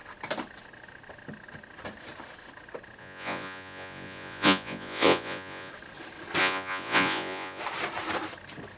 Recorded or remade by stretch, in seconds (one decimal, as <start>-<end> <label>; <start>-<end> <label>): 0.0-3.0 recorded; 3.0-5.7 remade; 5.7-6.4 recorded; 6.4-7.6 remade; 7.6-8.8 recorded